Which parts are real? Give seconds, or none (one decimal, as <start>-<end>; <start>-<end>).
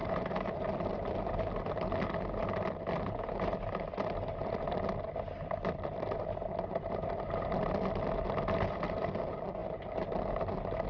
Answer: 3.5-4.4; 6.2-10.9